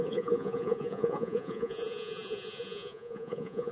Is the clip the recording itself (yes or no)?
no